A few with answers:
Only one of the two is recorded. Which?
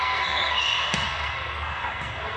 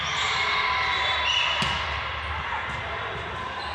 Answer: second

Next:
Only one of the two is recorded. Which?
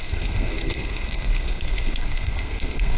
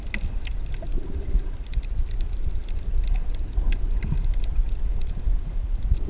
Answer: second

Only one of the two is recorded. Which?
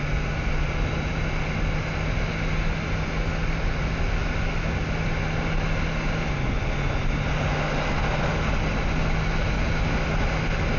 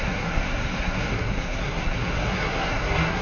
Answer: first